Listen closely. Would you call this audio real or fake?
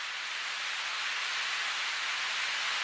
real